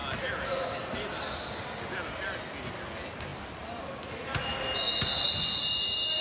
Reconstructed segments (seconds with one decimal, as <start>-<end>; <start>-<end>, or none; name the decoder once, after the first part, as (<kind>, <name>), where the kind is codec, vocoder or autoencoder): none